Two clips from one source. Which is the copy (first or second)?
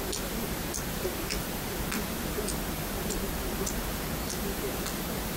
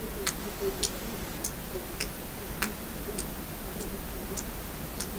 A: first